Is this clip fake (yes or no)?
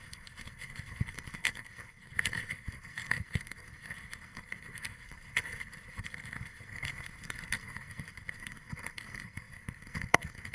yes